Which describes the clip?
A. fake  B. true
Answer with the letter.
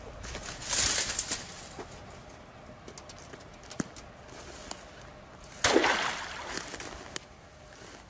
B